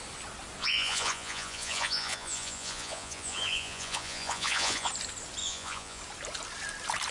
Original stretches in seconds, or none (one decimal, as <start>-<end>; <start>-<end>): 0.0-0.6; 4.9-5.4; 6.0-7.1